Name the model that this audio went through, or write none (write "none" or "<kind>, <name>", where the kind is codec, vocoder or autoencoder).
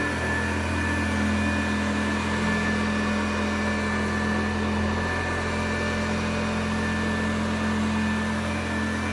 none